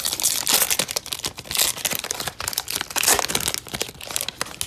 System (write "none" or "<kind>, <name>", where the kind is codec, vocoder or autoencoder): none